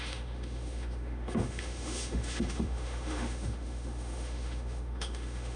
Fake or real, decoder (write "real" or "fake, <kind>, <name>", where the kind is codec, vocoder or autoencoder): fake, autoencoder, DAC-VAE